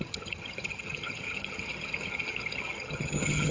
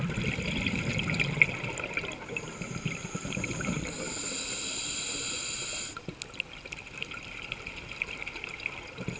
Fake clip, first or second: first